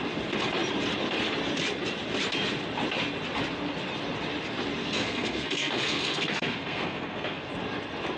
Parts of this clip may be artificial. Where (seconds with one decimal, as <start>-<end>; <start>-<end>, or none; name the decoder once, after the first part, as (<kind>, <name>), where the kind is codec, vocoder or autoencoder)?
4.8-7.5 (codec, SNAC)